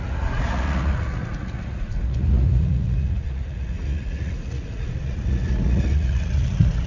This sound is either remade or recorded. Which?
remade